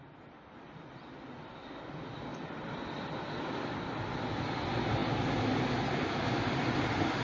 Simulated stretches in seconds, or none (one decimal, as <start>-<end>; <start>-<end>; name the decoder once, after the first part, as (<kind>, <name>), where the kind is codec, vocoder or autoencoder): none